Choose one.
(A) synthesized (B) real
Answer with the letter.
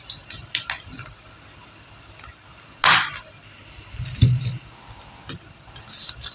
B